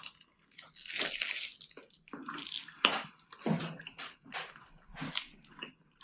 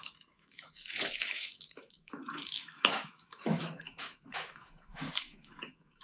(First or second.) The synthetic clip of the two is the second